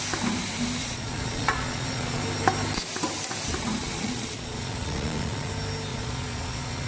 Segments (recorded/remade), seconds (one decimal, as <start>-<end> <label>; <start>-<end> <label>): 0.0-0.8 recorded; 0.8-2.2 remade; 2.2-3.8 recorded; 3.8-5.5 remade; 5.5-5.9 recorded; 5.9-6.9 remade